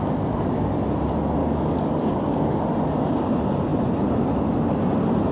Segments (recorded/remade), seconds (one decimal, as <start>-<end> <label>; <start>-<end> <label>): 0.0-1.4 recorded; 1.4-2.4 remade; 2.4-5.3 recorded